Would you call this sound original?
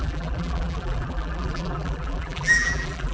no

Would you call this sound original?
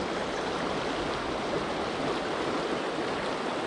yes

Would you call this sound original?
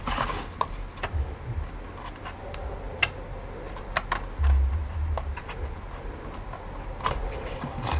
yes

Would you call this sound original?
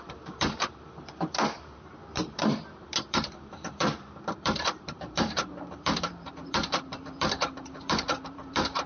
no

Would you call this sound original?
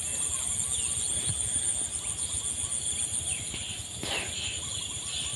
yes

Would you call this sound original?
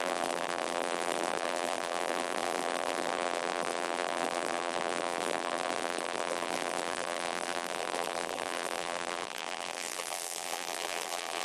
no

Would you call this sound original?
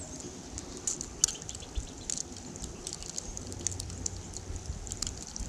yes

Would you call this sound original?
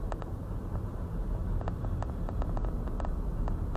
yes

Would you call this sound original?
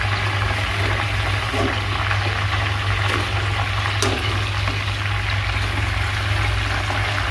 yes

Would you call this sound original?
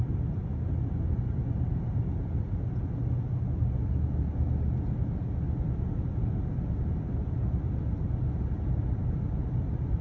yes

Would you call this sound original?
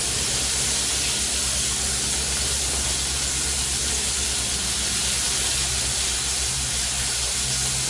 yes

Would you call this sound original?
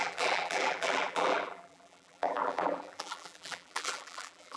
no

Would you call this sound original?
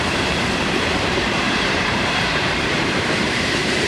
no